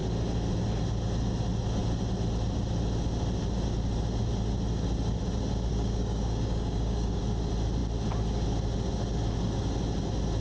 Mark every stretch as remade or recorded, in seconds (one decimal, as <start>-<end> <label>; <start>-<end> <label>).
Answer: 0.0-5.7 recorded; 5.7-7.2 remade; 7.2-10.4 recorded